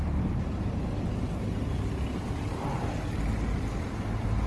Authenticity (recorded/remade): recorded